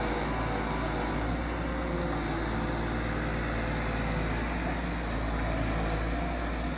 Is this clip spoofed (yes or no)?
no